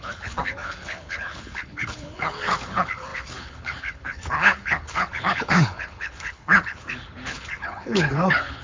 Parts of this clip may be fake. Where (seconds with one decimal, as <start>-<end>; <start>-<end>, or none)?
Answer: 0.0-8.6